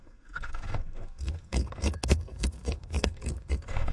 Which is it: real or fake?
fake